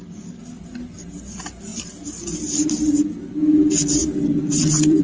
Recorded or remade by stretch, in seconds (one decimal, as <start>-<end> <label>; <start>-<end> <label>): 0.0-1.7 recorded; 1.7-3.3 remade; 3.3-4.0 recorded; 4.0-5.0 remade